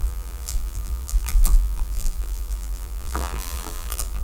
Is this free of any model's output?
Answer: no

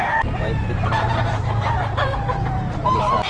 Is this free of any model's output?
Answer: no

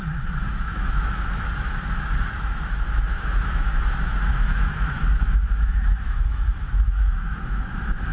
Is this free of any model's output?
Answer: no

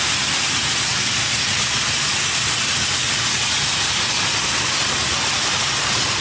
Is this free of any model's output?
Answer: yes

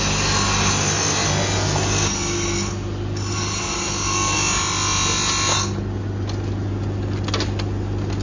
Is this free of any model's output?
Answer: yes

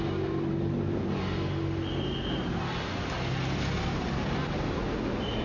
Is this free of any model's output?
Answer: yes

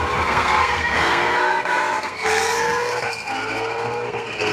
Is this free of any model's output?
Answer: no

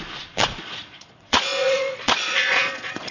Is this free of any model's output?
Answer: no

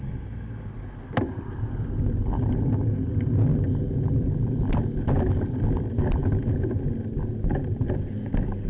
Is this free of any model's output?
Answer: yes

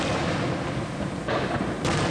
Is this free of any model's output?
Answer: yes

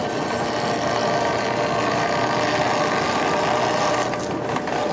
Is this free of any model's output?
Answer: yes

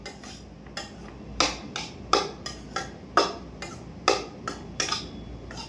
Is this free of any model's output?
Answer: yes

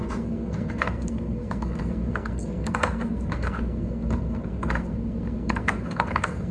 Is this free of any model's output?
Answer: no